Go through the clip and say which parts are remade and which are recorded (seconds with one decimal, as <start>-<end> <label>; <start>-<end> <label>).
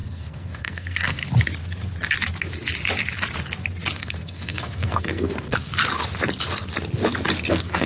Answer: 0.0-1.2 remade; 1.2-4.0 recorded; 4.0-5.7 remade; 5.7-7.5 recorded; 7.5-7.9 remade